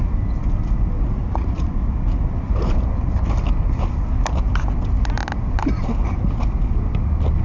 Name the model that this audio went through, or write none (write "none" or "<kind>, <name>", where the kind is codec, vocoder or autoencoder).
none